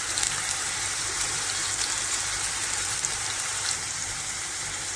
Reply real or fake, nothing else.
fake